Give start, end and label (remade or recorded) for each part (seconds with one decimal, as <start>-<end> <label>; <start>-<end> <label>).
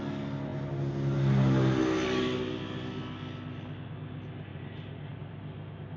0.0-4.5 recorded; 4.5-5.1 remade; 5.1-6.0 recorded